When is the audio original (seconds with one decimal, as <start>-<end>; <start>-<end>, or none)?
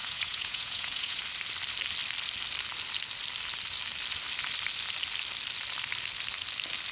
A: 1.2-6.9